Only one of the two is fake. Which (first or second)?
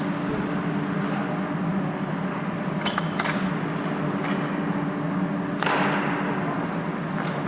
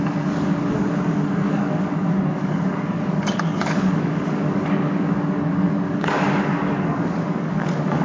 second